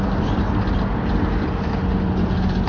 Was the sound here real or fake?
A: real